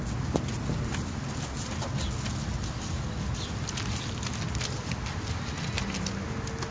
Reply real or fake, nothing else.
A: real